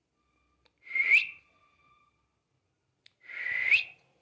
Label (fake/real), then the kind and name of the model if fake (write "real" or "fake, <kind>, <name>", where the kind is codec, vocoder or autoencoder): real